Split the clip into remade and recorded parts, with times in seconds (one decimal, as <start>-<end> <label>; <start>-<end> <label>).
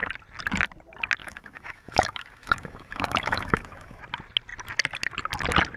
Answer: 0.0-1.2 recorded; 1.2-4.0 remade; 4.0-5.8 recorded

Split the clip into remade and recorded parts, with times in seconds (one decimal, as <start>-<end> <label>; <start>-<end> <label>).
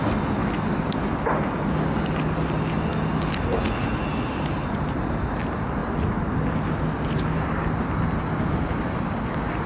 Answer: 0.0-9.7 recorded